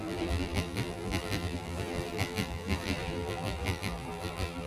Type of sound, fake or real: fake